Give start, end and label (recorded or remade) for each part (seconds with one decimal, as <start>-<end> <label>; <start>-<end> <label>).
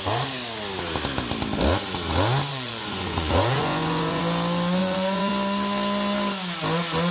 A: 0.0-2.5 recorded; 2.5-4.2 remade; 4.2-4.8 recorded; 4.8-5.3 remade; 5.3-7.1 recorded